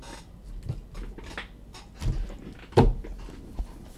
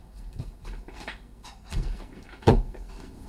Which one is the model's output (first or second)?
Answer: second